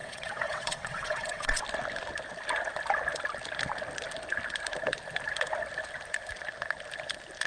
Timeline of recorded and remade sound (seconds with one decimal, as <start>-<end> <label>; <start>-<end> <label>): 0.0-1.6 remade; 1.6-7.5 recorded